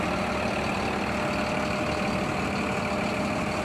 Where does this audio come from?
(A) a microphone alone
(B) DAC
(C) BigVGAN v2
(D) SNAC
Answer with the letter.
A